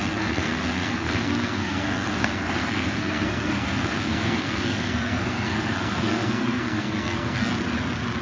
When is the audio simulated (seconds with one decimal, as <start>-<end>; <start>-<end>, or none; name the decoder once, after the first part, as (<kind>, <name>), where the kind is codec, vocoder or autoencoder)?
0.0-7.5 (codec, SNAC)